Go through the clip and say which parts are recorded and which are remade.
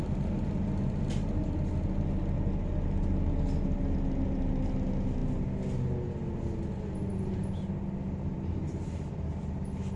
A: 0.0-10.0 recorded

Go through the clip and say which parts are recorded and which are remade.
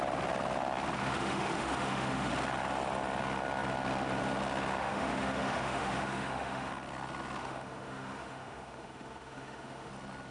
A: 0.0-1.0 recorded; 1.0-2.3 remade; 2.3-4.8 recorded; 4.8-6.7 remade; 6.7-7.4 recorded; 7.4-9.9 remade; 9.9-10.3 recorded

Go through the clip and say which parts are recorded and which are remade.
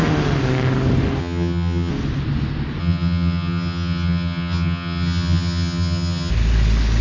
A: 0.0-1.2 recorded; 1.2-1.9 remade; 1.9-2.8 recorded; 2.8-6.3 remade; 6.3-7.0 recorded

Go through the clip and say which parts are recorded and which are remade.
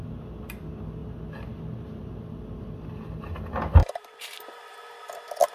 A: 0.0-3.8 recorded; 3.8-4.4 remade; 4.4-5.5 recorded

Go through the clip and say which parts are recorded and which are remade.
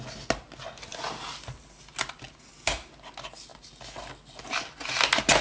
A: 0.0-5.4 recorded